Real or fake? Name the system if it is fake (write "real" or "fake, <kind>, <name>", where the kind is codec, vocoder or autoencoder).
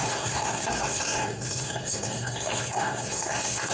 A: fake, codec, SNAC